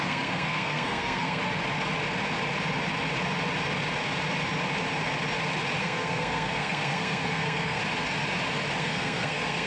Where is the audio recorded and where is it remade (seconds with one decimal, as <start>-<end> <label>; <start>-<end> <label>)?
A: 0.0-1.4 remade; 1.4-5.8 recorded; 5.8-7.8 remade; 7.8-8.8 recorded; 8.8-9.7 remade